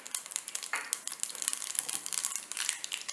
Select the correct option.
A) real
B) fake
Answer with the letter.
A